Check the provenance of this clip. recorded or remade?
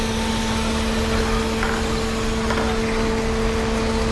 recorded